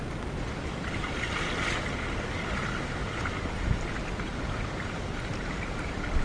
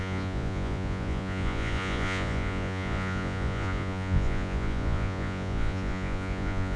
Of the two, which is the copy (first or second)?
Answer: second